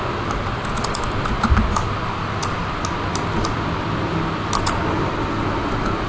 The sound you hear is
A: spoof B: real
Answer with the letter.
B